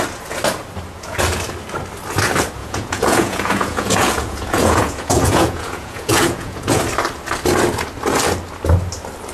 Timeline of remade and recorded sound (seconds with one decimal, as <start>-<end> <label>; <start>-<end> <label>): 0.0-2.6 recorded; 2.6-6.8 remade; 6.8-9.3 recorded